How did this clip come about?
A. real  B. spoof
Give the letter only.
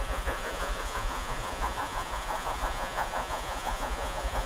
B